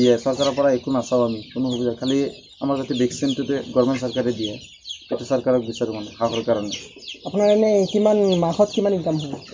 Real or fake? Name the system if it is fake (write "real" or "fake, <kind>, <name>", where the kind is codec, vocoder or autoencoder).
real